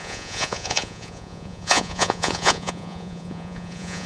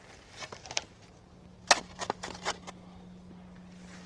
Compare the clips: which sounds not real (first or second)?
first